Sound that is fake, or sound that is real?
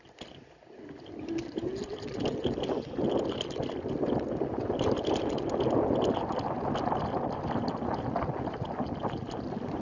real